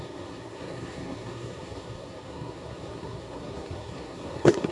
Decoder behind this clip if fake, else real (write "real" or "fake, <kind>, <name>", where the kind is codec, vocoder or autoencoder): fake, codec, SNAC